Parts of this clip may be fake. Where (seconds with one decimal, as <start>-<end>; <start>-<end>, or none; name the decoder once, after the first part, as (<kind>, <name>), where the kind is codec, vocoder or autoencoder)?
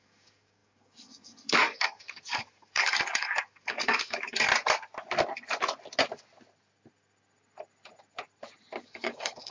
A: 0.0-4.5 (codec, DAC); 8.8-9.5